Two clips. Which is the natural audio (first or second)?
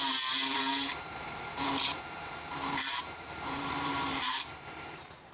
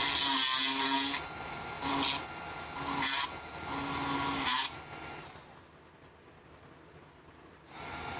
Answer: second